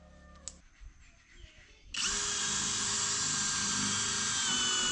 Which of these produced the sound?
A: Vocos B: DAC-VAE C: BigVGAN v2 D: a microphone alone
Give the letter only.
D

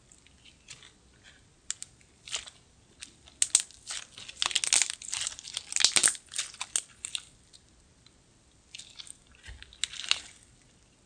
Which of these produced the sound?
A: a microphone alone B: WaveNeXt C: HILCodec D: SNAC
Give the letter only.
A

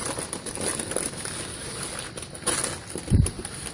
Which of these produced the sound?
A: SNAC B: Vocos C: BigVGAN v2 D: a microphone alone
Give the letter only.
D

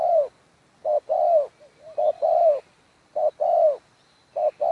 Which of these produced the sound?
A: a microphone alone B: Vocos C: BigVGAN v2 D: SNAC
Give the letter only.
C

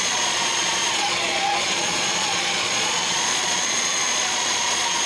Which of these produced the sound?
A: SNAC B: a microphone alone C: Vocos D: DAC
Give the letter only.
C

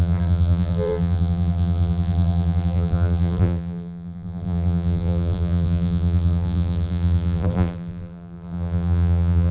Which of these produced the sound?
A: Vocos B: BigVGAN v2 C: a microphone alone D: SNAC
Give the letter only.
B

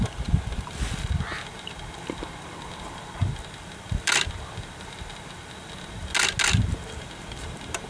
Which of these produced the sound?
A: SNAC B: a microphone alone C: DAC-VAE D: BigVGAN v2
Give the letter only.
B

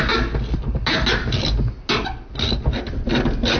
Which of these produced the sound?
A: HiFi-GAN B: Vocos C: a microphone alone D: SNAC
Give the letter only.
C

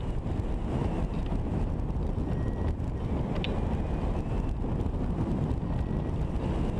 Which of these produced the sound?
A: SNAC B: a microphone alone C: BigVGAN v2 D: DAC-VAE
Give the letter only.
B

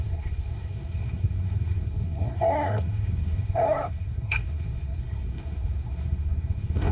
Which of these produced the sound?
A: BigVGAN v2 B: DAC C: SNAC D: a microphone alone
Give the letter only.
C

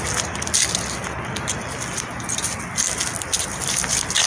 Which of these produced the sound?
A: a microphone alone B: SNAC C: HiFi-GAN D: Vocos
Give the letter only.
A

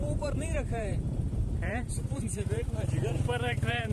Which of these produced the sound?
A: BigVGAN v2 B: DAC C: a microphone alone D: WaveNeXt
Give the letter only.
A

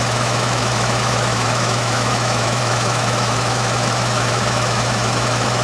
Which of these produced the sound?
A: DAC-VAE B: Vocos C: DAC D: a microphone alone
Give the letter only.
A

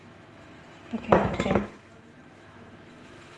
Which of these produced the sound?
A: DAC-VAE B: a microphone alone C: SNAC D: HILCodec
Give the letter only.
A